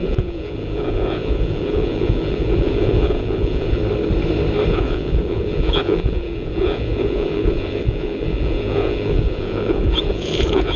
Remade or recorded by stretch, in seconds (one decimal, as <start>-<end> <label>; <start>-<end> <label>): 0.0-3.8 remade; 3.8-4.7 recorded; 4.7-10.8 remade